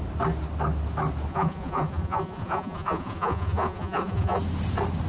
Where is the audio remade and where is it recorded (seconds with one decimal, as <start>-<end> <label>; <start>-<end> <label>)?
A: 0.0-1.3 recorded; 1.3-4.4 remade; 4.4-5.1 recorded

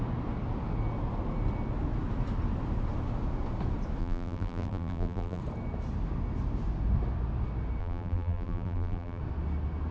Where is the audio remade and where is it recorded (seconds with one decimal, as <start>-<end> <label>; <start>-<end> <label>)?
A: 0.0-4.0 recorded; 4.0-5.4 remade; 5.4-7.8 recorded; 7.8-9.2 remade; 9.2-9.9 recorded

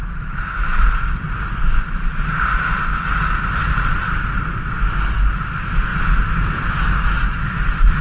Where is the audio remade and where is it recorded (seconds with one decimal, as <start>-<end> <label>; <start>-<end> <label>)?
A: 0.0-1.4 remade; 1.4-8.0 recorded

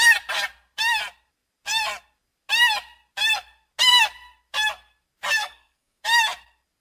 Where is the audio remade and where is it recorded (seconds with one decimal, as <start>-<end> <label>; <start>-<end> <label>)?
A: 0.0-5.4 recorded; 5.4-6.0 remade; 6.0-6.8 recorded